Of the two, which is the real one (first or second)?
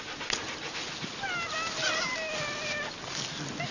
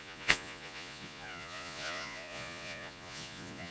first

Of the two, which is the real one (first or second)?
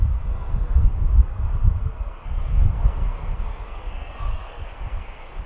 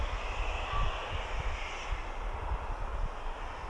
second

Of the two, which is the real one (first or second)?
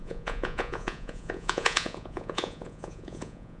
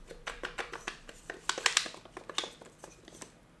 second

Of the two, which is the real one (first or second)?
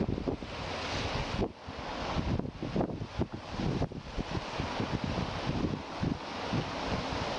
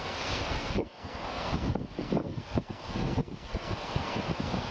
first